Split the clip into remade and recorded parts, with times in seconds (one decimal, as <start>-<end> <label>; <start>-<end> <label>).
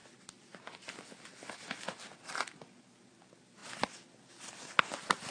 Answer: 0.0-5.3 recorded